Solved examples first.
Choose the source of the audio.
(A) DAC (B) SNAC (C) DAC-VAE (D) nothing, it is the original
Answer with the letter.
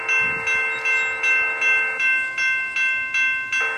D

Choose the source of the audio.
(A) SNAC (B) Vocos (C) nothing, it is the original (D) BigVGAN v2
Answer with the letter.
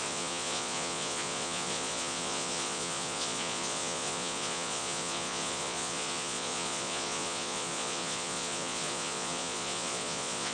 B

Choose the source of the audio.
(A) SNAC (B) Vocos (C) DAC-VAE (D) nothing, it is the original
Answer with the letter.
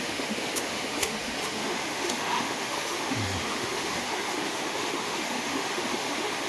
C